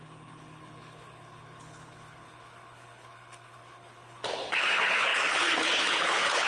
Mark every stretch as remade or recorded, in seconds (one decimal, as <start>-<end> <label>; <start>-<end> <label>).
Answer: 0.0-6.5 remade